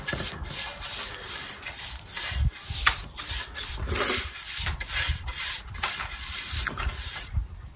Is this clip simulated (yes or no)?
yes